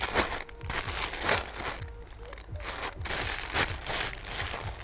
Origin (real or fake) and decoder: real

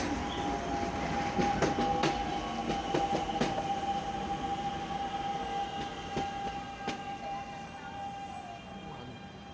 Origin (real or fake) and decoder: real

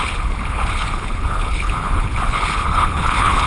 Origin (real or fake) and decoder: fake, codec, HILCodec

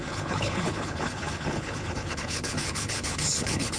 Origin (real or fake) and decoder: fake, codec, HILCodec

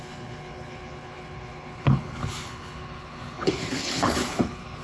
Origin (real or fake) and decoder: fake, codec, HILCodec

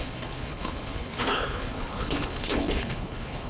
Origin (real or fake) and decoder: fake, codec, HILCodec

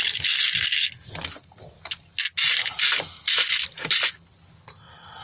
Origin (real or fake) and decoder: real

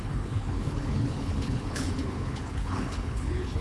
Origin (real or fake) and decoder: fake, codec, HILCodec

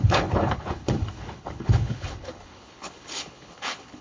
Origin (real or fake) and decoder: fake, codec, HILCodec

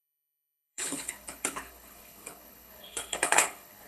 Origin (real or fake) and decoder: fake, codec, HILCodec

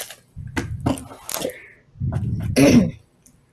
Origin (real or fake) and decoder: real